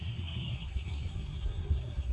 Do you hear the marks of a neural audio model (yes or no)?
yes